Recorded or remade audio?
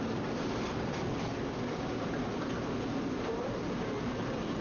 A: recorded